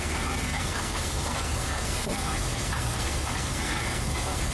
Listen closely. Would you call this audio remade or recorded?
remade